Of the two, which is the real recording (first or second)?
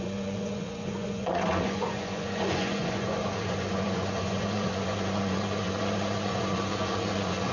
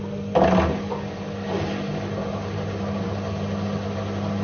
second